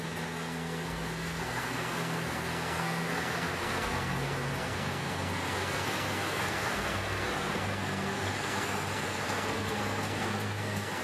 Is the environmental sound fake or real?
fake